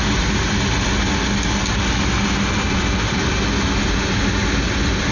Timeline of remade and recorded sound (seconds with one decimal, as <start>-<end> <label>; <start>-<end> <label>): 0.0-5.1 recorded